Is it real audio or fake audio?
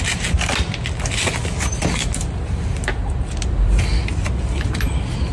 real